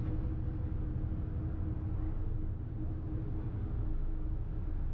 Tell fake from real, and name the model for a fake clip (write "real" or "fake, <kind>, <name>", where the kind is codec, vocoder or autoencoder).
real